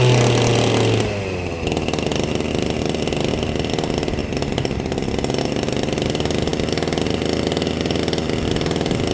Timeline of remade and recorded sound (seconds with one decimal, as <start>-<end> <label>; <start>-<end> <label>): 0.0-9.1 recorded